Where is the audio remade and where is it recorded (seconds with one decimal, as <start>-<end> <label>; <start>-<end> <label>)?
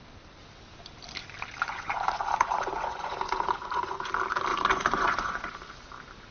0.0-1.7 recorded; 1.7-4.1 remade; 4.1-4.5 recorded; 4.5-5.7 remade; 5.7-6.3 recorded